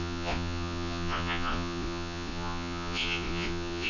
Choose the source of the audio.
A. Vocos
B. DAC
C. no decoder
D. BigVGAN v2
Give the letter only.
A